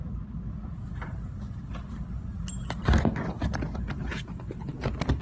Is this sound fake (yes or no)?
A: no